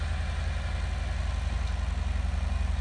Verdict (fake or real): real